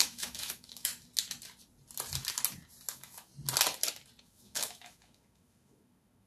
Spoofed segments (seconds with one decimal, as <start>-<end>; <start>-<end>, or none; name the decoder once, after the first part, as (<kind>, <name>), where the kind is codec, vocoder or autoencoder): 0.0-0.9 (autoencoder, DAC-VAE); 2.9-3.3; 4.2-6.3